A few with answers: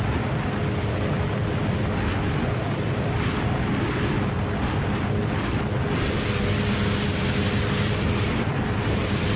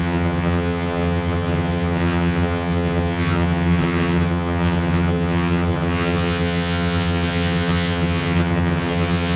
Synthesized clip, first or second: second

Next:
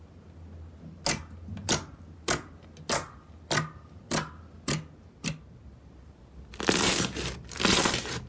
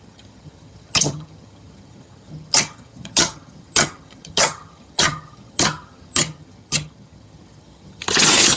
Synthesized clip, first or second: second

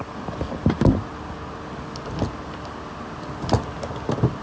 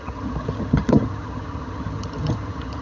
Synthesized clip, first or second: second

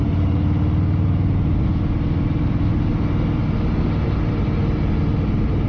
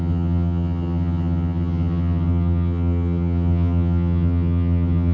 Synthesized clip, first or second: second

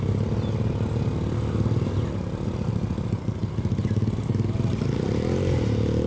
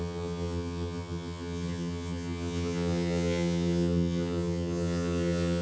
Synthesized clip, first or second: second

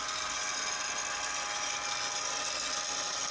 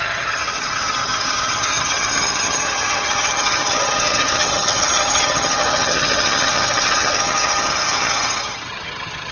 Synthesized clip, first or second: second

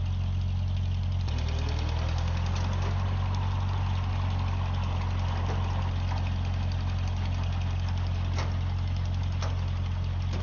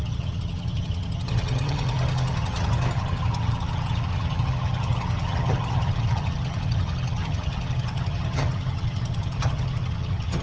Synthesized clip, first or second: second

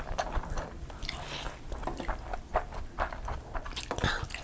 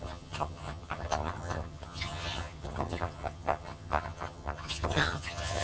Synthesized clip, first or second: second